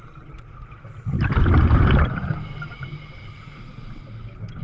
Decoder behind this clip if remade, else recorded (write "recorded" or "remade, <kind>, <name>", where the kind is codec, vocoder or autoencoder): recorded